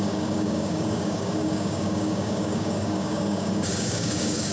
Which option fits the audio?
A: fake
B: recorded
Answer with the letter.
A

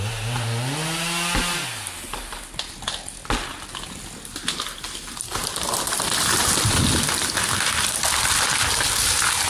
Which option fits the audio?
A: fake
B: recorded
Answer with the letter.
B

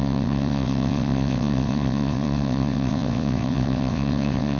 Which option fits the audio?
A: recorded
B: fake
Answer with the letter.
B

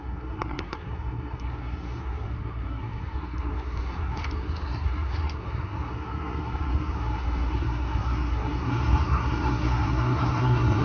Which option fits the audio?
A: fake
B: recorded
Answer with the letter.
A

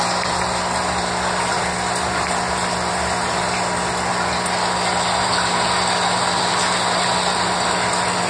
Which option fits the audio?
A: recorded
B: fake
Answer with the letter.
A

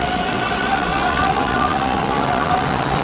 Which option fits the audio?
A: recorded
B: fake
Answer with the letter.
B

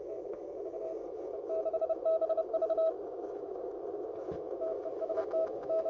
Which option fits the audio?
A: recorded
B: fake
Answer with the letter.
B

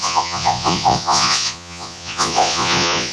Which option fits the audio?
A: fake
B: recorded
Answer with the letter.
A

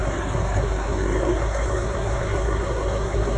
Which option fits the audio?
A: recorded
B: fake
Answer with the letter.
B